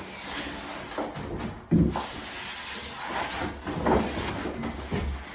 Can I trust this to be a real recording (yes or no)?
yes